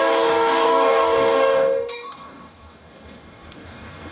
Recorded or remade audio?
remade